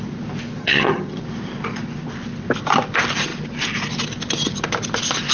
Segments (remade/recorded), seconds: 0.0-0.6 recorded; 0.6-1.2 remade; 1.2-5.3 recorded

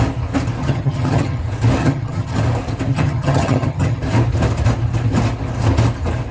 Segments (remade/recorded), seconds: 0.0-0.6 recorded; 0.6-1.4 remade; 1.4-1.8 recorded; 1.8-2.4 remade; 2.4-2.9 recorded; 2.9-4.0 remade; 4.0-6.3 recorded

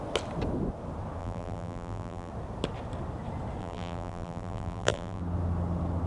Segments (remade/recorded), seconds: 0.0-1.2 recorded; 1.2-2.3 remade; 2.3-3.6 recorded; 3.6-5.2 remade; 5.2-6.1 recorded

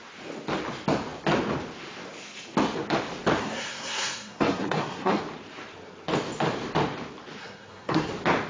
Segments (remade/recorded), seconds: 0.0-3.4 recorded; 3.4-5.2 remade; 5.2-7.4 recorded; 7.4-8.1 remade; 8.1-8.5 recorded

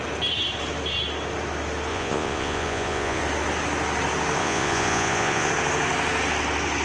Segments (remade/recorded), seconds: 0.0-1.9 recorded; 1.9-3.2 remade; 3.2-4.4 recorded; 4.4-5.5 remade; 5.5-6.8 recorded

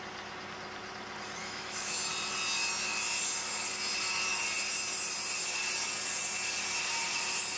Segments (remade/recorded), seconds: 0.0-1.4 recorded; 1.4-2.1 remade; 2.1-7.6 recorded

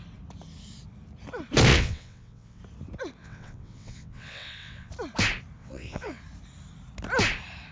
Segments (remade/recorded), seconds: 0.0-1.7 recorded; 1.7-2.6 remade; 2.6-3.2 recorded; 3.2-4.9 remade; 4.9-5.6 recorded; 5.6-6.2 remade; 6.2-7.7 recorded

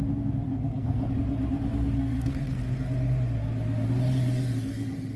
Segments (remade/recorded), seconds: 0.0-0.5 recorded; 0.5-1.1 remade; 1.1-2.0 recorded; 2.0-2.6 remade; 2.6-5.2 recorded